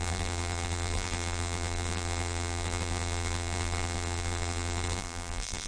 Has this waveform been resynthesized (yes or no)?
yes